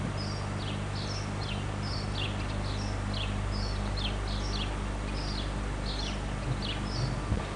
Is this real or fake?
real